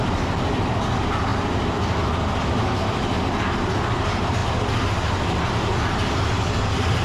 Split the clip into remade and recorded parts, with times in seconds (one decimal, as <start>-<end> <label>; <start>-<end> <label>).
0.0-7.0 recorded